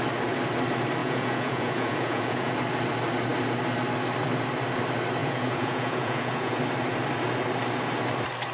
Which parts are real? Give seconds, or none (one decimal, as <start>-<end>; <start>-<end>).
0.0-1.0; 2.5-5.2; 6.6-8.5